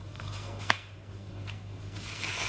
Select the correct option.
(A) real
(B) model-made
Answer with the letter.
B